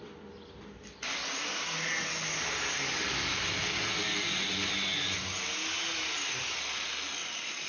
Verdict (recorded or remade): recorded